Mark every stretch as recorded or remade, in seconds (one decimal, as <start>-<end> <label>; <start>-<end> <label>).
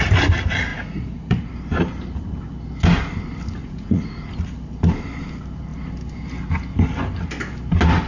0.0-0.7 recorded; 0.7-1.5 remade; 1.5-3.6 recorded; 3.6-4.3 remade; 4.3-8.1 recorded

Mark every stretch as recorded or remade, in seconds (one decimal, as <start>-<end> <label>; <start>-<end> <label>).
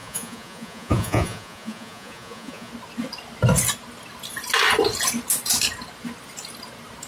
0.0-2.7 remade; 2.7-7.1 recorded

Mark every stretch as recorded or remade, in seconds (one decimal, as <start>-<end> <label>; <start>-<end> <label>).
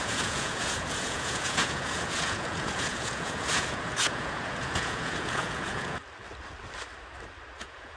0.0-6.0 remade; 6.0-7.6 recorded; 7.6-8.0 remade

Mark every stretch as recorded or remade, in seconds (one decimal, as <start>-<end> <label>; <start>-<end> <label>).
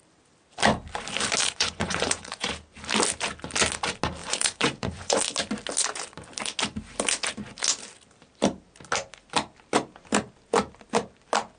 0.0-1.4 recorded; 1.4-2.5 remade; 2.5-4.2 recorded; 4.2-5.2 remade; 5.2-11.6 recorded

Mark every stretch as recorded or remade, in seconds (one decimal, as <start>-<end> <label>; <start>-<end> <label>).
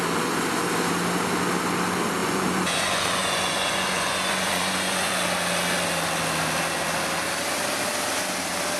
0.0-2.2 recorded; 2.2-5.1 remade; 5.1-8.8 recorded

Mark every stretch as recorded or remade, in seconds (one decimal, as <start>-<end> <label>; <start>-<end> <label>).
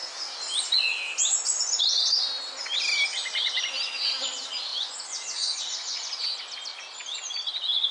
0.0-4.7 recorded; 4.7-6.1 remade; 6.1-7.9 recorded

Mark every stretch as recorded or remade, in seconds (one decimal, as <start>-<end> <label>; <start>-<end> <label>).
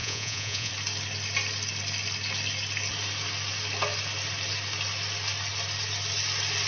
0.0-0.7 remade; 0.7-6.7 recorded